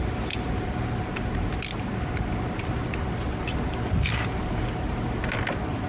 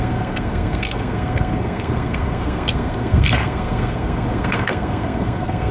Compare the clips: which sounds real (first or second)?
first